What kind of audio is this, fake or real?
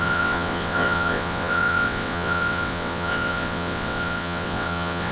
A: fake